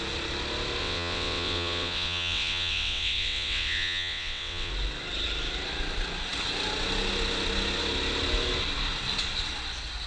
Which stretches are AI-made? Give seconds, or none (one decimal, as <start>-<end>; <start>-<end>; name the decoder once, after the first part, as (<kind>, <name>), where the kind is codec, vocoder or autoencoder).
0.8-4.7 (vocoder, WaveNeXt)